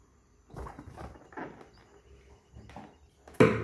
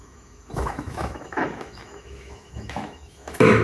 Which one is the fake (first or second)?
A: second